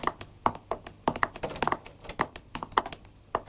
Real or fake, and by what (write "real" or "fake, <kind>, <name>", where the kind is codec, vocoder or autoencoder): real